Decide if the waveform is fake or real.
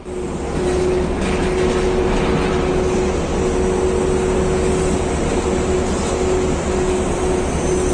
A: real